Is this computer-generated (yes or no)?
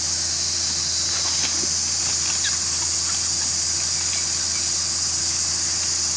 no